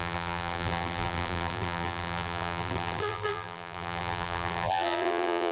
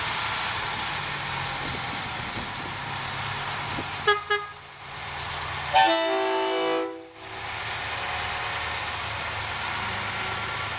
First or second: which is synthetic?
first